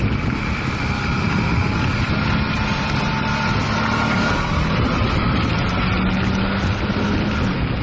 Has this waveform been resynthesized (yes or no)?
no